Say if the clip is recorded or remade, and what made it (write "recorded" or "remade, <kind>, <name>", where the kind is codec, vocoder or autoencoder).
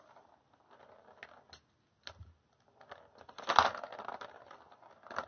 recorded